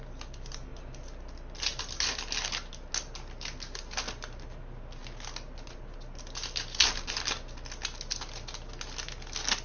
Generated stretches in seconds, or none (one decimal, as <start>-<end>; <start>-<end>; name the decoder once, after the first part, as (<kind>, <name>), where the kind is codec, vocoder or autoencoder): none